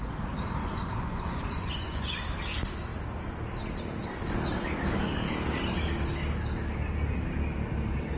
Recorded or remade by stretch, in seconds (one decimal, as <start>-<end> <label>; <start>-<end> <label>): 0.0-0.6 recorded; 0.6-2.2 remade; 2.2-8.2 recorded